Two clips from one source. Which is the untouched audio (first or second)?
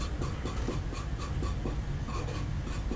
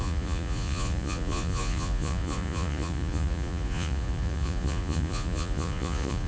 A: first